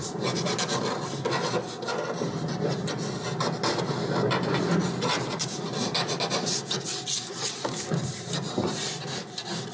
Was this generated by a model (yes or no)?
no